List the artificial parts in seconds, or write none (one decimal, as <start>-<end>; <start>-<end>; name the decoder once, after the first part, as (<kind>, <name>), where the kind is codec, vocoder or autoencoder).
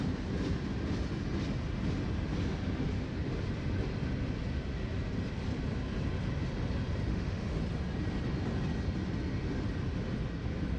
7.1-7.6 (autoencoder, DAC-VAE)